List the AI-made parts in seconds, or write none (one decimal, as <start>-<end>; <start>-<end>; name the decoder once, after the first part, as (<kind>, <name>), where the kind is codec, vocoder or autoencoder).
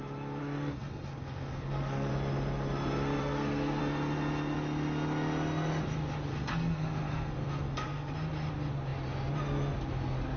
0.4-2.1 (codec, SNAC); 3.2-3.8; 6.3-8.1